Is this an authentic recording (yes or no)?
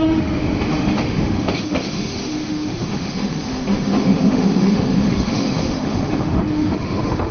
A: no